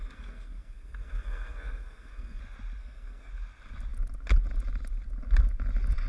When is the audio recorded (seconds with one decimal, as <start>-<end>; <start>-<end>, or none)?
2.4-2.8; 3.3-6.1

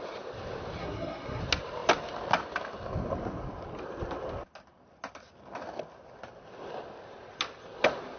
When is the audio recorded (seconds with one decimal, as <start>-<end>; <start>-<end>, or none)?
0.0-0.8; 1.4-8.2

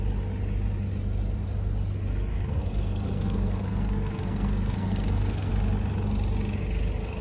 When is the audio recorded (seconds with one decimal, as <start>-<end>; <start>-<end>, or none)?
0.0-2.3; 5.5-7.2